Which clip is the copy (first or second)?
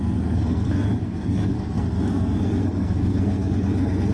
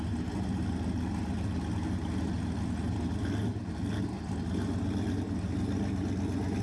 first